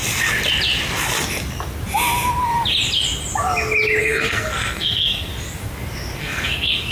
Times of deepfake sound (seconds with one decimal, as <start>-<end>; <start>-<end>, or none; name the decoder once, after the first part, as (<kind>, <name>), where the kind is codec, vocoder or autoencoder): 4.0-5.3 (codec, SNAC); 6.2-6.9